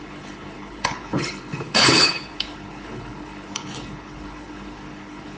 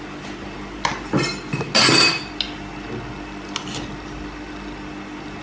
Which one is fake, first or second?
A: first